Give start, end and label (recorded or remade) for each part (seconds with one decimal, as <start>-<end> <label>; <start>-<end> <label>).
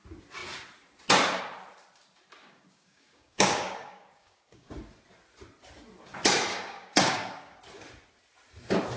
0.0-2.4 recorded; 2.4-4.7 remade; 4.7-6.5 recorded; 6.5-7.6 remade; 7.6-9.0 recorded